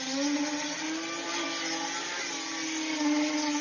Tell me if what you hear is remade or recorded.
recorded